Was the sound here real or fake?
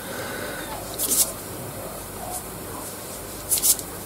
fake